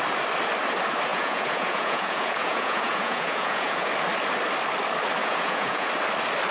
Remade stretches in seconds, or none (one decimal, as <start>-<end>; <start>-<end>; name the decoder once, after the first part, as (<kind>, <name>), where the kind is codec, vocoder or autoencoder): 1.1-3.9 (vocoder, Vocos); 5.2-5.9